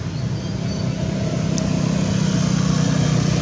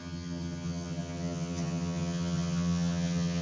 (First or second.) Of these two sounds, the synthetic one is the second